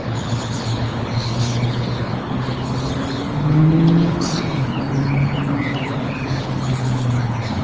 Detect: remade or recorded remade